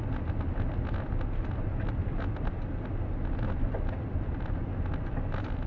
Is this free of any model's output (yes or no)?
yes